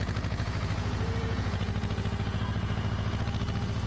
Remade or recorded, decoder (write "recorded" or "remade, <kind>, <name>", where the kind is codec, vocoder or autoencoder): remade, vocoder, Vocos